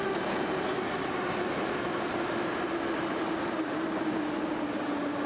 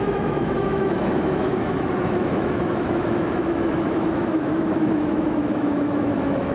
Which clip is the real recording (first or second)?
first